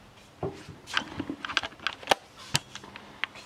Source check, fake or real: real